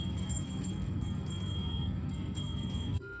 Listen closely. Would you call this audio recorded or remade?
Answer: remade